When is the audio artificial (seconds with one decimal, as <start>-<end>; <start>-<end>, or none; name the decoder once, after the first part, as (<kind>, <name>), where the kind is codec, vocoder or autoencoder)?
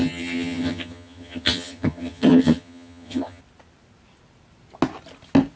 0.0-3.4 (vocoder, HiFi-GAN)